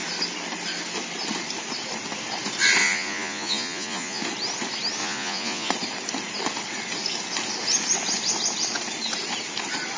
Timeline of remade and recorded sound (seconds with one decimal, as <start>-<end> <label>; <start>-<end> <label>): 0.0-2.8 recorded; 2.8-4.2 remade; 4.2-5.0 recorded; 5.0-5.7 remade; 5.7-10.0 recorded